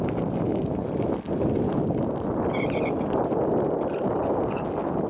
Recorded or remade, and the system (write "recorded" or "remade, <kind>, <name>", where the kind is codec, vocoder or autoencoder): recorded